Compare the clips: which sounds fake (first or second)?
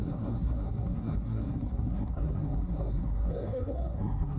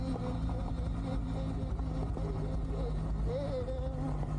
first